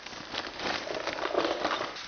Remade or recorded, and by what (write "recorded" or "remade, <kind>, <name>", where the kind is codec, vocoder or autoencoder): recorded